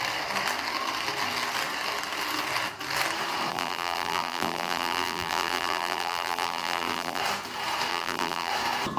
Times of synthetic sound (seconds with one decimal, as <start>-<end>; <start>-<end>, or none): 3.5-7.2; 7.9-8.5